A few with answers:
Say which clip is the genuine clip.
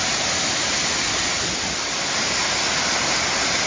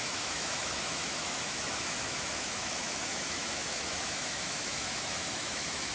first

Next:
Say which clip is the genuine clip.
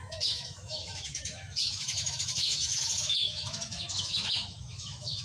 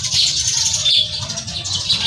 second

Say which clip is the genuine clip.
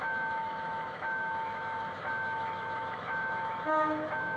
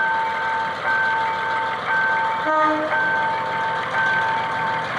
second